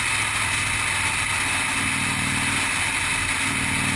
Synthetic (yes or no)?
no